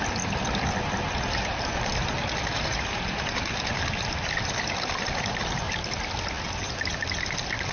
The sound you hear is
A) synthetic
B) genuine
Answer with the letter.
B